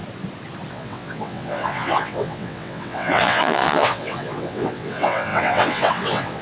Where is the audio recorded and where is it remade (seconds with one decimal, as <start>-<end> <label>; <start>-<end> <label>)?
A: 0.0-0.7 recorded; 0.7-6.4 remade